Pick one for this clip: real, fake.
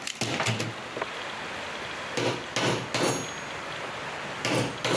real